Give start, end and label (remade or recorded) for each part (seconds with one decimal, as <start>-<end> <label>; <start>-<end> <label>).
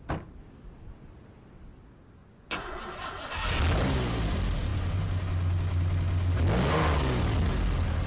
0.0-2.2 recorded; 2.2-2.8 remade; 2.8-8.1 recorded